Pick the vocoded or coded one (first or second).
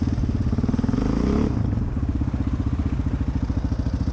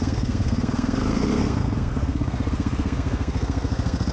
second